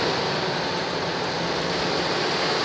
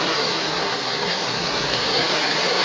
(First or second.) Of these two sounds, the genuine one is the first